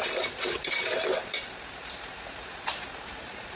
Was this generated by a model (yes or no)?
yes